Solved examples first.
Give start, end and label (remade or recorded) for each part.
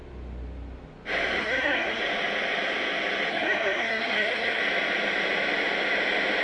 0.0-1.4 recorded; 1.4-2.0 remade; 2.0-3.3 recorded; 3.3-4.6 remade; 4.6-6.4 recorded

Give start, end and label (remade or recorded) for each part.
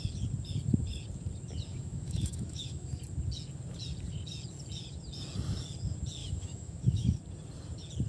0.0-1.7 recorded; 1.7-2.9 remade; 2.9-6.2 recorded; 6.2-7.2 remade; 7.2-8.1 recorded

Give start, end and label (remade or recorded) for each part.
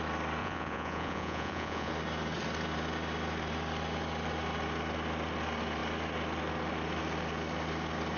0.0-0.4 recorded; 0.4-1.9 remade; 1.9-8.2 recorded